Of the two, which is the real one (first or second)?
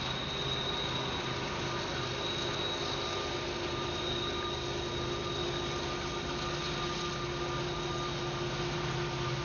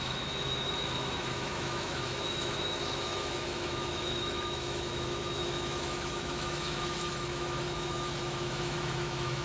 first